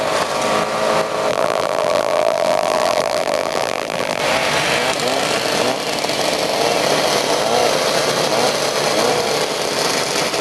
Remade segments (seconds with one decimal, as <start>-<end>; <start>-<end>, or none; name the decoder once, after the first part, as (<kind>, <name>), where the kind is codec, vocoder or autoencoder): 1.3-4.2 (vocoder, BigVGAN v2)

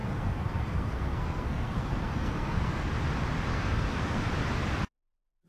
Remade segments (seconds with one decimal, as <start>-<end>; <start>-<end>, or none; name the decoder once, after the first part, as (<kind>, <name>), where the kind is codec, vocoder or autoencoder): 0.0-2.9 (codec, SNAC); 3.5-4.3

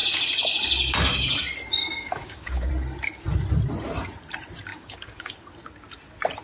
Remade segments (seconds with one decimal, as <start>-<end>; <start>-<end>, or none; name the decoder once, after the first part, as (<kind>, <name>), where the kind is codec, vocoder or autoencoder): 1.8-2.7 (codec, DAC); 4.7-5.3

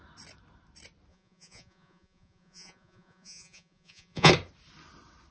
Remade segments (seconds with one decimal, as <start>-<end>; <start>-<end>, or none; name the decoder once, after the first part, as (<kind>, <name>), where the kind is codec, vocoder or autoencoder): 1.1-4.3 (vocoder, Vocos)